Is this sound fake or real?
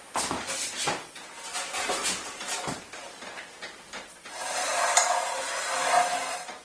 real